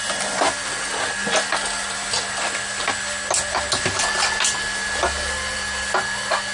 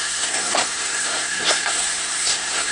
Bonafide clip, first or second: first